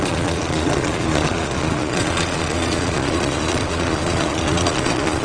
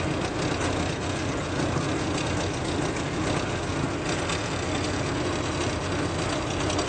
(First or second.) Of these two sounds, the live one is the second